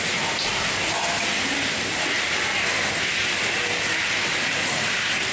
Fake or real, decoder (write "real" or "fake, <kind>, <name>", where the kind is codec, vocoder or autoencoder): real